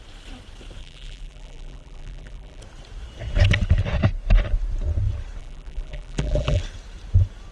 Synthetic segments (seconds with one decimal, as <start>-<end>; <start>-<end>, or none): 0.8-2.6; 5.4-6.6